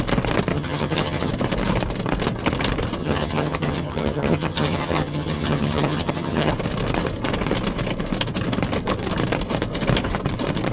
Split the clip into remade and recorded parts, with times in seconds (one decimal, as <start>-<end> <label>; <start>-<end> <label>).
0.0-0.5 recorded; 0.5-1.3 remade; 1.3-3.0 recorded; 3.0-6.5 remade; 6.5-10.7 recorded